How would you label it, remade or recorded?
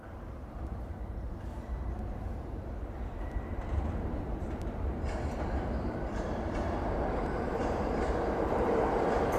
remade